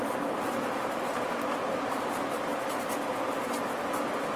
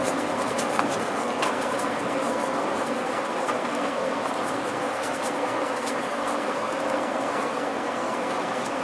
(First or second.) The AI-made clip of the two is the second